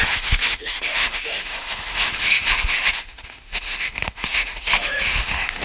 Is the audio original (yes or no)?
no